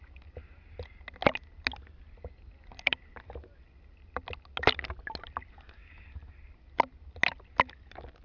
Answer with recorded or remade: recorded